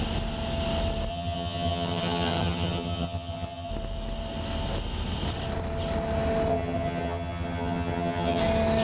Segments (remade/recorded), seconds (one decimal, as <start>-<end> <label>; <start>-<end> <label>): 0.0-1.1 recorded; 1.1-3.7 remade; 3.7-6.5 recorded; 6.5-8.4 remade; 8.4-8.8 recorded